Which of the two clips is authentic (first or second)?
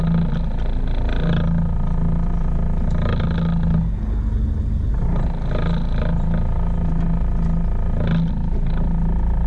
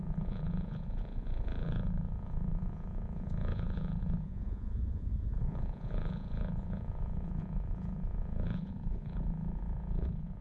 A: first